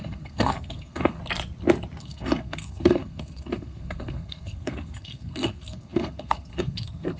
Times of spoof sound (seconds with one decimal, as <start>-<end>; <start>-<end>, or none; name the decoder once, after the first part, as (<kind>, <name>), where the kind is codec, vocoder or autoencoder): 0.0-1.2 (codec, SNAC); 2.0-7.2